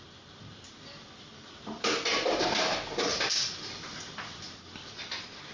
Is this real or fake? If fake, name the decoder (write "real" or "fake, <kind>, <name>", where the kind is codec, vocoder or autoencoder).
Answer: real